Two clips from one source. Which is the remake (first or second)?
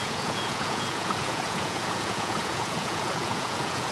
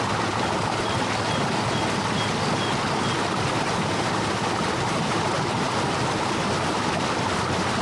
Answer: first